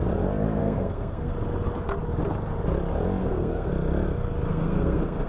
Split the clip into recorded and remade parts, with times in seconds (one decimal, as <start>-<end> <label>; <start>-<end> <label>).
0.0-0.6 recorded; 0.6-1.3 remade; 1.3-3.2 recorded; 3.2-3.7 remade; 3.7-4.5 recorded; 4.5-5.3 remade